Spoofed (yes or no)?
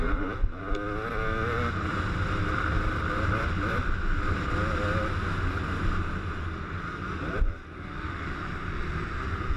no